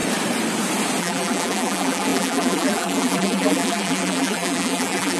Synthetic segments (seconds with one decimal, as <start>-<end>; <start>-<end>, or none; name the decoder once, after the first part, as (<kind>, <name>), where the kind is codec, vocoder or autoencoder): 1.0-5.2 (vocoder, BigVGAN v2)